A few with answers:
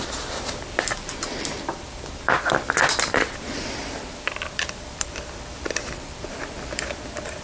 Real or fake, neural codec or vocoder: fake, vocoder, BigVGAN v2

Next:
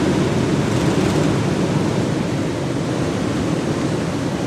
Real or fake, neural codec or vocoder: real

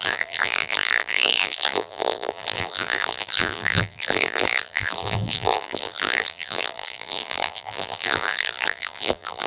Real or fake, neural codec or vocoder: fake, vocoder, BigVGAN v2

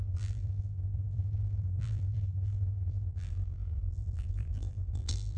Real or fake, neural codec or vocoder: fake, vocoder, BigVGAN v2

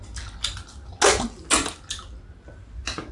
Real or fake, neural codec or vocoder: real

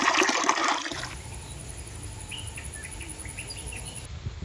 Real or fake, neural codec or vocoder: real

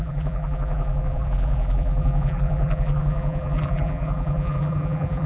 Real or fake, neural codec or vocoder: fake, vocoder, BigVGAN v2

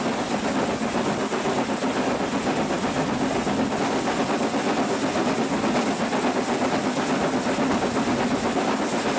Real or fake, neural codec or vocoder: real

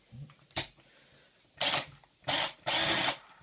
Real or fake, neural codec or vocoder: real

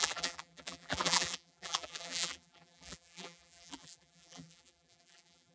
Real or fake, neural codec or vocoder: fake, vocoder, BigVGAN v2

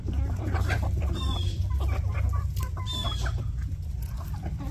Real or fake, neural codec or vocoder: fake, vocoder, BigVGAN v2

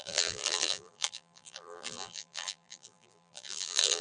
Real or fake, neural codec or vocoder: fake, vocoder, BigVGAN v2